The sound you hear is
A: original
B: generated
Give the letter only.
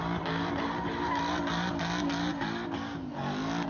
A